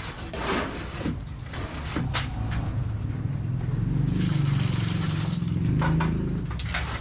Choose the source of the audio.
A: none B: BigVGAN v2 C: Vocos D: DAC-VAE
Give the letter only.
A